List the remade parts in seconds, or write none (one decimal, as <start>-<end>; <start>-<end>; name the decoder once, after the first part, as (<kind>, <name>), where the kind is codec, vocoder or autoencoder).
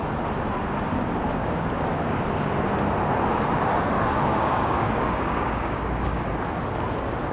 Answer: 1.4-2.2 (codec, DAC); 4.3-6.3